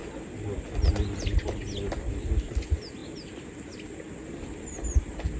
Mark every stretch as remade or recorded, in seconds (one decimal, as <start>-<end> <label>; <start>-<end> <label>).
0.0-5.4 recorded